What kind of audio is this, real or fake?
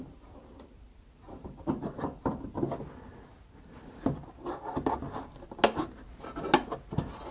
real